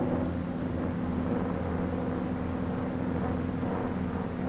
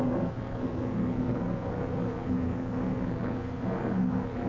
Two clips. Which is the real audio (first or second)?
first